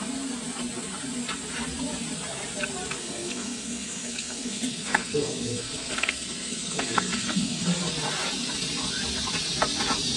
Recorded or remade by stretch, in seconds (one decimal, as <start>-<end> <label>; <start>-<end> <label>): 0.0-3.0 recorded; 3.0-7.6 remade; 7.6-10.2 recorded